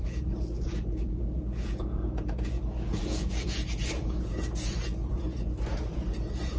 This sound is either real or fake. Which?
fake